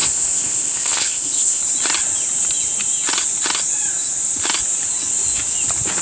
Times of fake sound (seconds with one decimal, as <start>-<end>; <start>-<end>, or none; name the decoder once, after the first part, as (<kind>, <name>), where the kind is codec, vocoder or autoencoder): 0.0-1.6 (codec, ZipCodec)